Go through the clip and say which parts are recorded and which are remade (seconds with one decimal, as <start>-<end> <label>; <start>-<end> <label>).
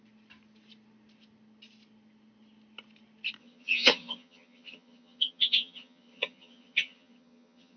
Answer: 0.0-3.4 recorded; 3.4-7.8 remade